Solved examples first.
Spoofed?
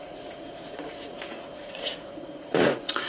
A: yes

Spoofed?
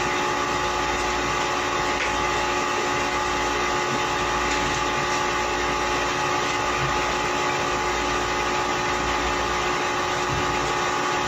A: no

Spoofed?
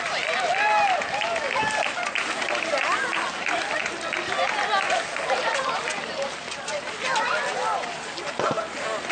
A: no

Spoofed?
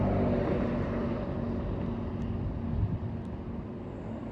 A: no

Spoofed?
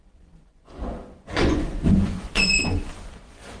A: yes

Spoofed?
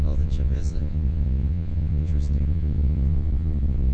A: yes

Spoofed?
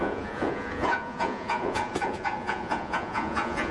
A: yes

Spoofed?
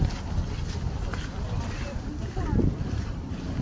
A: no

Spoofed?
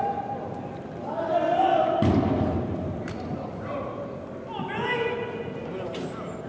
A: no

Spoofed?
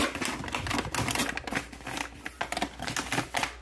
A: no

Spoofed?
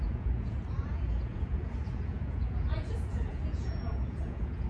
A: yes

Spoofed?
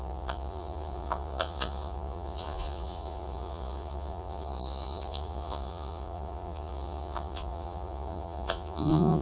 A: yes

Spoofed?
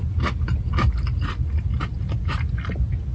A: no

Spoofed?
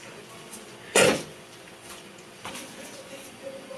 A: yes